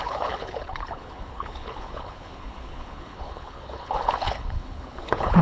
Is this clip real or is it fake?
fake